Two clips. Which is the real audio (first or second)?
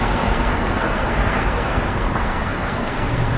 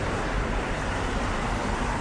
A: second